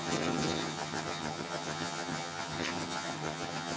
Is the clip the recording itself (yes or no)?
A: no